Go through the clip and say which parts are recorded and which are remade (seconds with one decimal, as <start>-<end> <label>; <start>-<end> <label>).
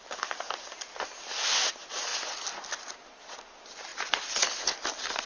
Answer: 0.0-5.3 recorded